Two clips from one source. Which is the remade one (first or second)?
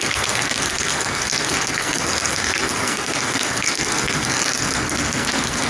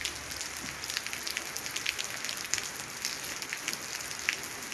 first